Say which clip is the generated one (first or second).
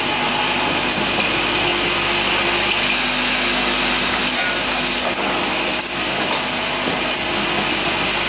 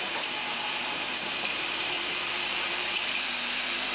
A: second